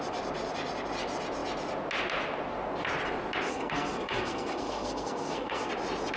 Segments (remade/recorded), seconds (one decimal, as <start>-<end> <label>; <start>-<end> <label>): 0.0-3.5 recorded; 3.5-5.7 remade; 5.7-6.2 recorded